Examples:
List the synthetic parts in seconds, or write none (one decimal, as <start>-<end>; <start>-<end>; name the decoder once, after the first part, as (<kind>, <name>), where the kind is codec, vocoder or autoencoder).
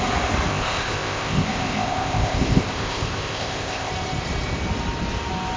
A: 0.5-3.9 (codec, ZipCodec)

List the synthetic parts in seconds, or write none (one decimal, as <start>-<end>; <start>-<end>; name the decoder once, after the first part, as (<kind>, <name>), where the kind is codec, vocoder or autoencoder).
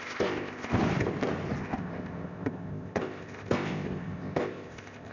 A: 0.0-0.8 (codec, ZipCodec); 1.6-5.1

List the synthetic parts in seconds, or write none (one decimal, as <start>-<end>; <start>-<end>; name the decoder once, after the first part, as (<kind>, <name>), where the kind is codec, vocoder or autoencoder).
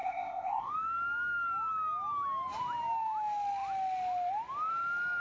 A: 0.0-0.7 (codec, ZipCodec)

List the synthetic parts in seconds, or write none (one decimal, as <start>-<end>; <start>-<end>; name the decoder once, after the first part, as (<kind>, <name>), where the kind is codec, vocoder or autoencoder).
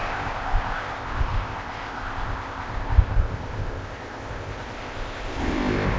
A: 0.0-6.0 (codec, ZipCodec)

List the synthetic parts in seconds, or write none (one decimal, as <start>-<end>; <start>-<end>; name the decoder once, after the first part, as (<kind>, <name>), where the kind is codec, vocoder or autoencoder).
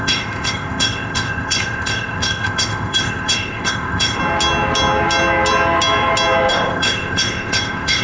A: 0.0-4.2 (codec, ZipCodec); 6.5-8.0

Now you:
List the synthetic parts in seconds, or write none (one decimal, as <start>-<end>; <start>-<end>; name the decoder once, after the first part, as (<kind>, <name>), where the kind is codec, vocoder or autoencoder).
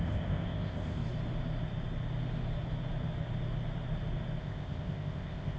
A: 0.0-1.0 (codec, ZipCodec); 4.4-5.6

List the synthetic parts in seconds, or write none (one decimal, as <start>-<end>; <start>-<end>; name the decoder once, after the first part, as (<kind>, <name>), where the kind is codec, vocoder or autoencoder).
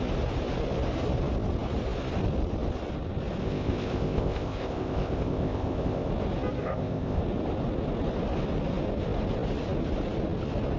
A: 3.4-6.1 (codec, ZipCodec); 6.6-7.2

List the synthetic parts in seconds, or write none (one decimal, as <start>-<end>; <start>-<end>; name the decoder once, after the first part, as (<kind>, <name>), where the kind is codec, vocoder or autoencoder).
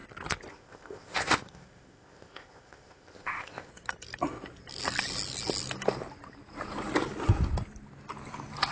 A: 0.5-3.7 (codec, ZipCodec)